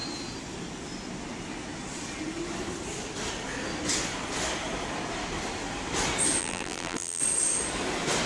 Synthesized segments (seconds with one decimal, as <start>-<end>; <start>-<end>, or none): 6.4-7.2